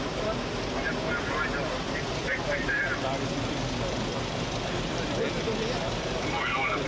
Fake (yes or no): no